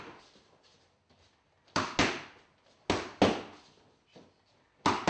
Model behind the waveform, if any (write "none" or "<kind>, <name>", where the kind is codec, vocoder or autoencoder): none